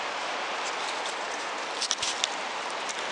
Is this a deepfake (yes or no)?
no